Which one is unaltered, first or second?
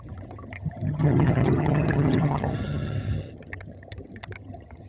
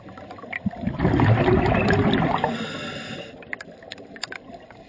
second